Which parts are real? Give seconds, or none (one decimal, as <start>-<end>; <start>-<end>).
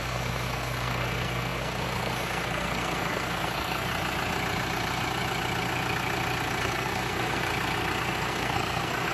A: 3.9-6.6; 7.5-8.0